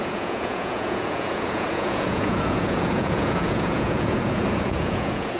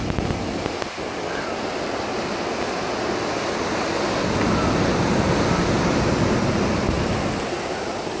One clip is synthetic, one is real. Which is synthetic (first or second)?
first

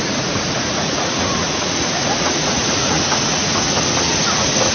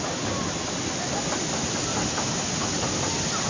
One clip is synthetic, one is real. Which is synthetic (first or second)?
first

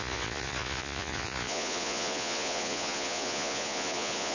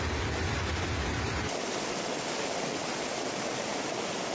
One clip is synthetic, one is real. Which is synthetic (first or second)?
first